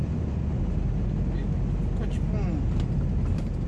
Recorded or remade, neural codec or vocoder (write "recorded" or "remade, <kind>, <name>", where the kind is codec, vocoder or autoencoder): recorded